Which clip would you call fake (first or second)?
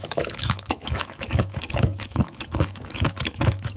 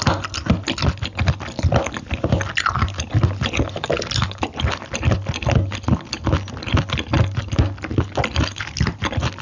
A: first